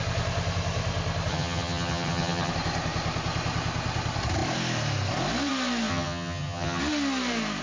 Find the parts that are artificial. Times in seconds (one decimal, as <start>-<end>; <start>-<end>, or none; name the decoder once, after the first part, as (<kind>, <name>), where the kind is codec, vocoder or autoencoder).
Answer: 1.3-2.5 (vocoder, HiFi-GAN); 5.9-6.8